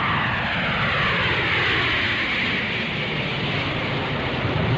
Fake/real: real